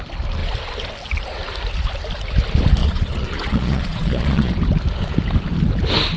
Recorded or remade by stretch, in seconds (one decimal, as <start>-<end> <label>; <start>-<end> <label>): 0.0-2.8 recorded; 2.8-4.5 remade; 4.5-6.2 recorded